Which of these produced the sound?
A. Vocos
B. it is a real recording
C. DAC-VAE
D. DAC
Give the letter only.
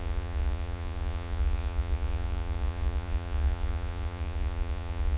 A